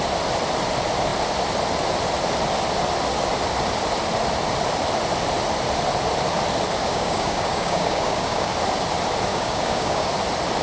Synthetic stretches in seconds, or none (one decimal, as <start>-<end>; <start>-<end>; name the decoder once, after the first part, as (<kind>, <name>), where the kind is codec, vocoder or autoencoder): 6.8-8.5 (codec, DAC); 9.3-10.1